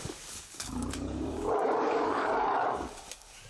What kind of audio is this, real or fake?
fake